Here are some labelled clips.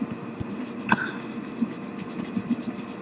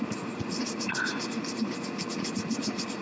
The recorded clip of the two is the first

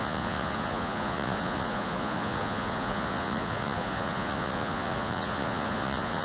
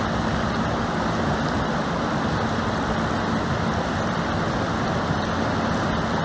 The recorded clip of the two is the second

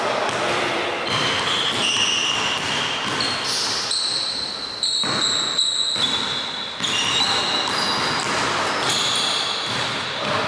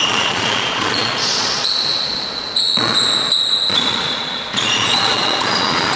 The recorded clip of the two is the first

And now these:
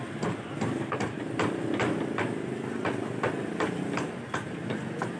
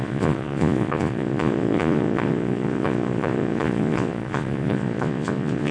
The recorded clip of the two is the first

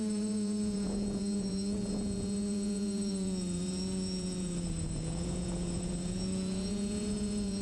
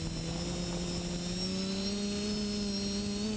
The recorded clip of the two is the second